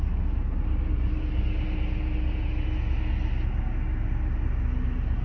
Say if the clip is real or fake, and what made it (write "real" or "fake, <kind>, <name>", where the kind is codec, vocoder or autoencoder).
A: real